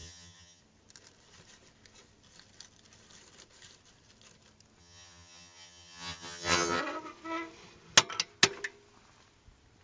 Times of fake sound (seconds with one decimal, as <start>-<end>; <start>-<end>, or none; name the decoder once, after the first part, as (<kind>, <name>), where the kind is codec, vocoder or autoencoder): 0.0-0.6 (vocoder, HiFi-GAN); 4.8-6.8